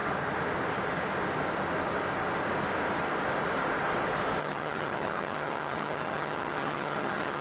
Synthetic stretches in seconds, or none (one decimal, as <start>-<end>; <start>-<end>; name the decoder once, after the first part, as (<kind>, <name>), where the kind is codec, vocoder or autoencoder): 4.4-7.4 (vocoder, HiFi-GAN)